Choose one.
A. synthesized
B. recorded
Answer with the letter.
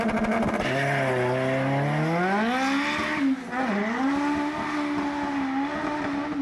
B